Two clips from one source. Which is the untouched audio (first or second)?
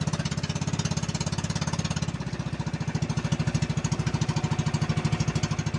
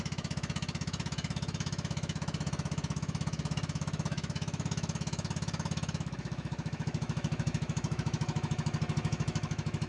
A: first